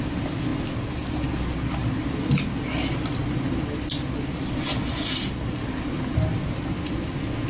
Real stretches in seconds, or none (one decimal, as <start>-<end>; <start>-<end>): 0.0-7.5